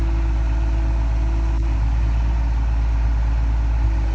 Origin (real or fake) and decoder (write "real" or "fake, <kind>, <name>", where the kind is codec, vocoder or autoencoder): real